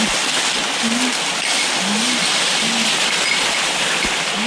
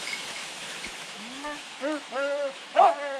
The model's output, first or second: second